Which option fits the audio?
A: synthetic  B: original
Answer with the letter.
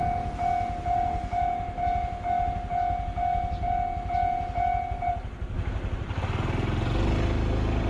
B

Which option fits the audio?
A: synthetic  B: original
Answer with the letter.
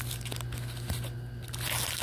B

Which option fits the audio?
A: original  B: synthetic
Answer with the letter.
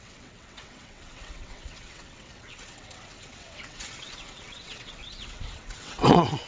B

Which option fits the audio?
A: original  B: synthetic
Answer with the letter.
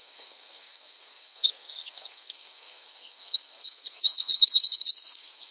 B